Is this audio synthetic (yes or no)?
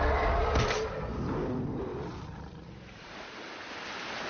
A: no